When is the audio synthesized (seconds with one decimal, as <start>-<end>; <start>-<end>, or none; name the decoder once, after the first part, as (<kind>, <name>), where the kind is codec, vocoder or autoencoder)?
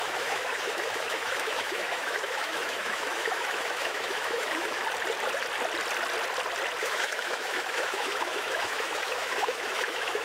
0.0-4.8 (autoencoder, DAC-VAE); 6.8-10.2